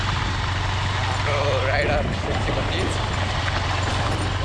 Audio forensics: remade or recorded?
recorded